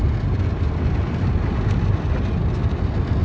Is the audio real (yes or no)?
yes